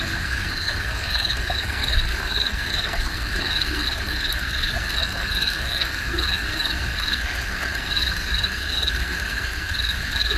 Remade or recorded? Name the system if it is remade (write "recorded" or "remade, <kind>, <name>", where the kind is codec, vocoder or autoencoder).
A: remade, codec, SNAC